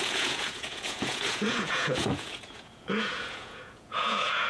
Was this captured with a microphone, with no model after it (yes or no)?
no